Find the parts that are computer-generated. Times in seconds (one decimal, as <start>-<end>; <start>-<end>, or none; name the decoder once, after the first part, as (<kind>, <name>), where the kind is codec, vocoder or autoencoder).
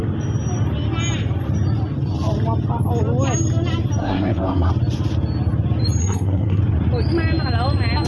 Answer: 4.0-4.7 (codec, SNAC); 6.0-6.6